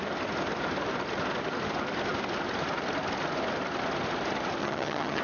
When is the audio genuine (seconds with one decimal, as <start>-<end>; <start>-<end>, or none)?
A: 0.0-4.6